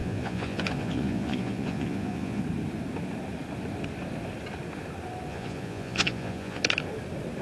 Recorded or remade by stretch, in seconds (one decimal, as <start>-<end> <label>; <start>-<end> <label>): 0.0-2.4 remade; 2.4-5.3 recorded; 5.3-6.6 remade; 6.6-7.4 recorded